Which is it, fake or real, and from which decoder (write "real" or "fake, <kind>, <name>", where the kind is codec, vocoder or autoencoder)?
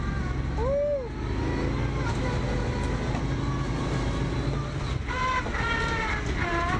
real